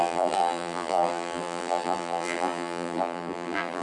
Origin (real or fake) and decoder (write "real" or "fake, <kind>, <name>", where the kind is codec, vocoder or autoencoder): fake, vocoder, BigVGAN v2